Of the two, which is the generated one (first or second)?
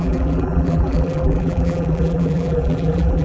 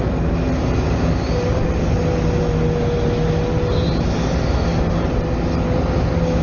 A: first